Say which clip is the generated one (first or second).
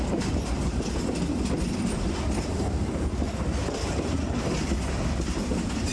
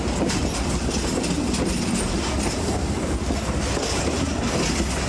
first